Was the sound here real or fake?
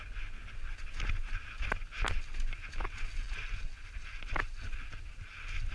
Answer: real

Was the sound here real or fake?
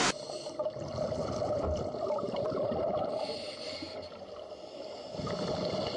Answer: real